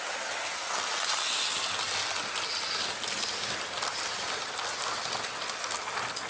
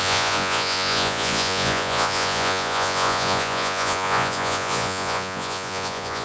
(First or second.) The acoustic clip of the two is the first